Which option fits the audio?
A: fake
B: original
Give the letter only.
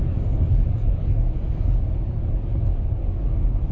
A